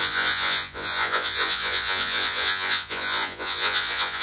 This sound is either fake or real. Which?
fake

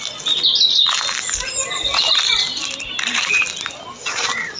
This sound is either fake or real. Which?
real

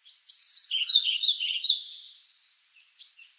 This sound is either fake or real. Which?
fake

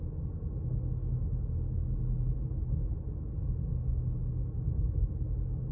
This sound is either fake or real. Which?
real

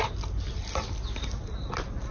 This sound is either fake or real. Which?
real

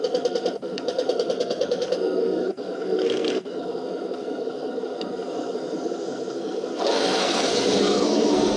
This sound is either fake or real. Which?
fake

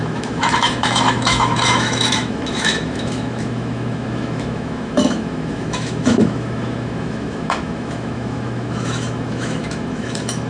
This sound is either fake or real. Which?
fake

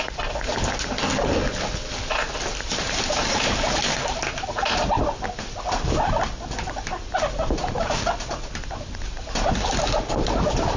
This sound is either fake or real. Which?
real